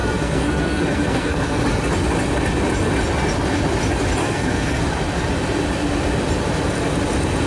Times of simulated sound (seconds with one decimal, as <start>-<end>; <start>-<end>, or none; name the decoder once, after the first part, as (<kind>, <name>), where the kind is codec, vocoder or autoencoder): 0.0-1.6 (codec, SNAC); 4.2-4.8